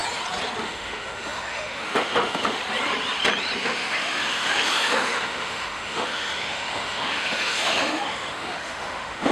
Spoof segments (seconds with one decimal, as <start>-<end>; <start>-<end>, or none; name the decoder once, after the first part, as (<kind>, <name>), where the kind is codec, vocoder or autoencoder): 0.6-2.6 (autoencoder, DAC-VAE); 3.6-9.3